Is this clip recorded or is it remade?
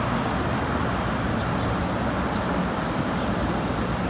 recorded